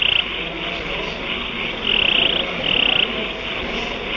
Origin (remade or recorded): recorded